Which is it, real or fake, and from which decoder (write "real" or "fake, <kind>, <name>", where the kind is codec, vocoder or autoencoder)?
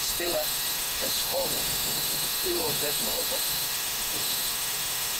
fake, autoencoder, DAC-VAE